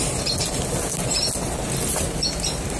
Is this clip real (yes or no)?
yes